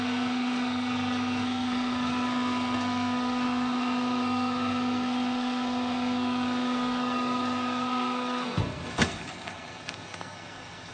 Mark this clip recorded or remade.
remade